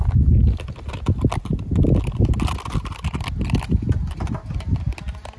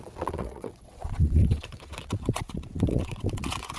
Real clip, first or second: first